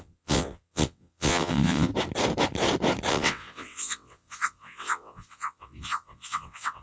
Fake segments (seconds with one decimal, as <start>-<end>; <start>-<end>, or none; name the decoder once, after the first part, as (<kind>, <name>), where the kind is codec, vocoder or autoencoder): 0.0-1.9 (vocoder, WaveNeXt); 3.1-6.8